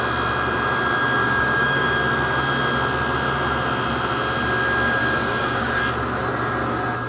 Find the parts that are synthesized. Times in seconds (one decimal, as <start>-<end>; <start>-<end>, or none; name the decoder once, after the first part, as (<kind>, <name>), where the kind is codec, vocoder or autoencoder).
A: 1.2-2.0 (codec, DAC); 5.0-5.8